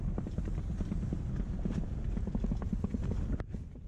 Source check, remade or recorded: recorded